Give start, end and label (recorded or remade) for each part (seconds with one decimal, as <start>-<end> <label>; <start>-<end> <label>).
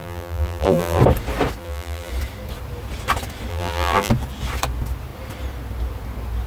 0.0-1.0 remade; 1.0-1.6 recorded; 1.6-2.1 remade; 2.1-3.5 recorded; 3.5-4.1 remade; 4.1-6.5 recorded